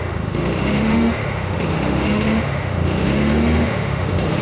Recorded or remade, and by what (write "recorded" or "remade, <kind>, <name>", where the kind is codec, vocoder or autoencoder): remade, autoencoder, DAC-VAE